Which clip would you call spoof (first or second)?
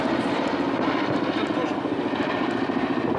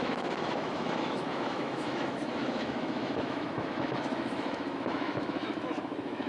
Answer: second